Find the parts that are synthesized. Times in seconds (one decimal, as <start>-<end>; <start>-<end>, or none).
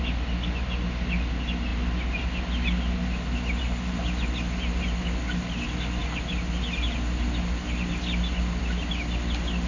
none